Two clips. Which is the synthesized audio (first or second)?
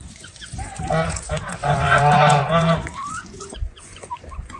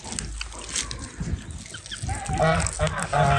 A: first